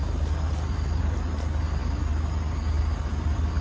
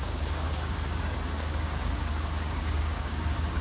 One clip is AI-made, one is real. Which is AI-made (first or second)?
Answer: second